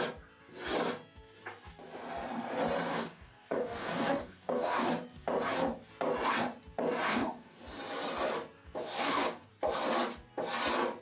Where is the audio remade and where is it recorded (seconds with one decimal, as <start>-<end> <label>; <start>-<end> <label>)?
0.0-2.9 recorded; 2.9-4.9 remade; 4.9-7.1 recorded; 7.1-7.6 remade; 7.6-8.8 recorded; 8.8-9.5 remade; 9.5-11.0 recorded